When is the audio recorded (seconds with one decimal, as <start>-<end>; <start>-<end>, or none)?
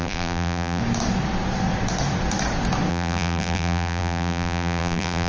0.8-2.9